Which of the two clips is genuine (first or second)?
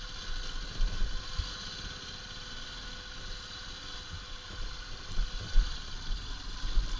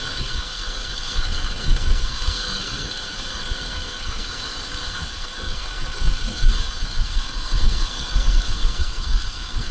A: first